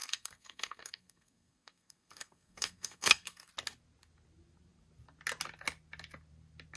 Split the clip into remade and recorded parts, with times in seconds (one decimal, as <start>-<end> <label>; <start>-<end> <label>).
0.0-3.5 remade; 3.5-6.8 recorded